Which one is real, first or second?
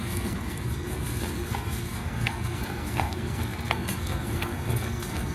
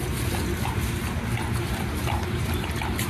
second